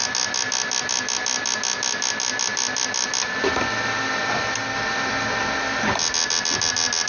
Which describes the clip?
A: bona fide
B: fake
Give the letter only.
A